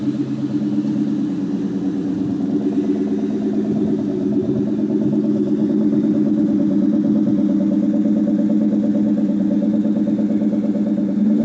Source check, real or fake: real